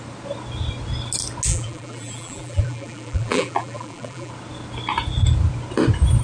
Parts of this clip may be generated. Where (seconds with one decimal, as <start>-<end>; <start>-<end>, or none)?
1.5-4.3